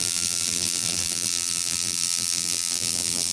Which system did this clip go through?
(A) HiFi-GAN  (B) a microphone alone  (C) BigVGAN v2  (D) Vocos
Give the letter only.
C